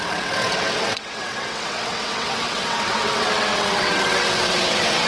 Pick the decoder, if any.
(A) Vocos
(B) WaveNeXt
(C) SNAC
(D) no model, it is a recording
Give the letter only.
B